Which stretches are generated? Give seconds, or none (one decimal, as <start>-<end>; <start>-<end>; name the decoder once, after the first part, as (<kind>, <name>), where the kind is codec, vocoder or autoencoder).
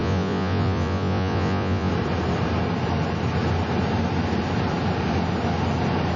0.0-1.9 (vocoder, Vocos)